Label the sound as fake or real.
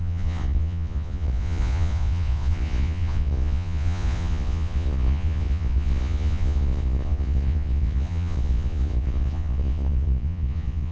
fake